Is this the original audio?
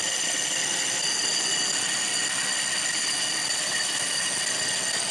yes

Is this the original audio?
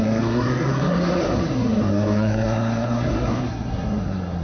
no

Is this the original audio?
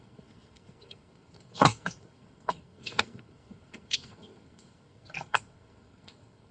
no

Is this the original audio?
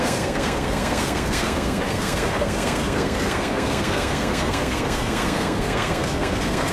no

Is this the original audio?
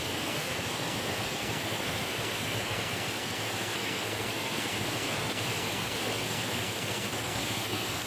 no